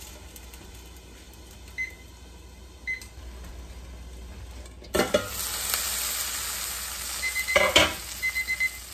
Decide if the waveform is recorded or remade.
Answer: recorded